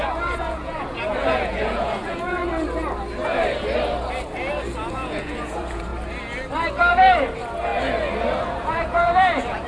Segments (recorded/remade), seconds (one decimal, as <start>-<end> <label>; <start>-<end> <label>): 0.0-2.4 remade; 2.4-4.9 recorded; 4.9-5.9 remade; 5.9-6.9 recorded; 6.9-7.7 remade; 7.7-8.4 recorded; 8.4-9.7 remade